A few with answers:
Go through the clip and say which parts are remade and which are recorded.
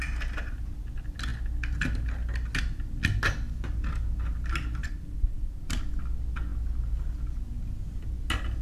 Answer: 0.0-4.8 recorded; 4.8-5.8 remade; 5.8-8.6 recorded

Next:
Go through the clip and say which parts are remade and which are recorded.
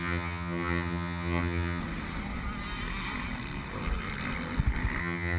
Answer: 0.0-1.8 remade; 1.8-5.0 recorded; 5.0-5.4 remade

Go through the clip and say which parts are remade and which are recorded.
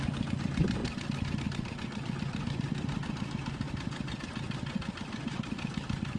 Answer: 0.0-6.2 recorded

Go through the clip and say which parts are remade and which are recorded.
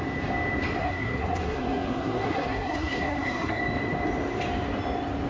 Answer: 0.0-0.8 recorded; 0.8-3.6 remade; 3.6-5.3 recorded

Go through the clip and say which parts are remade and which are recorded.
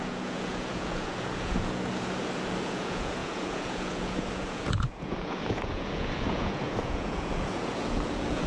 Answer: 0.0-8.5 remade